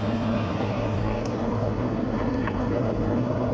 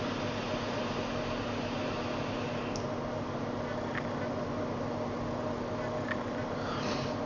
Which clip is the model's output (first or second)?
first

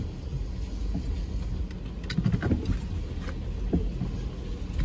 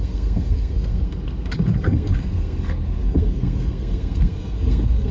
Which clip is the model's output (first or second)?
second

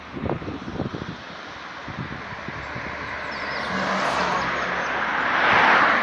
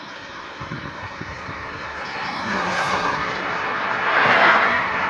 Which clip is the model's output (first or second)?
second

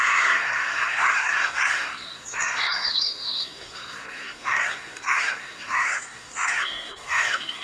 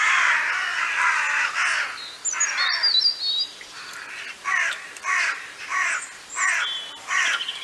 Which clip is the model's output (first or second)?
first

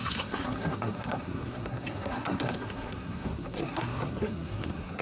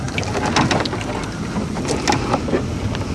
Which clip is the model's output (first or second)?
first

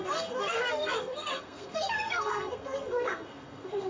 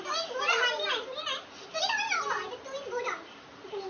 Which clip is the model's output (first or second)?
first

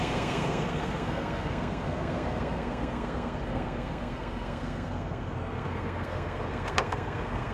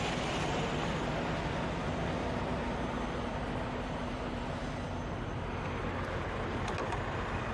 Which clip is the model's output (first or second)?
first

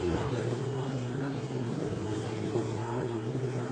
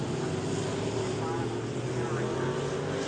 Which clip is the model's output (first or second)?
first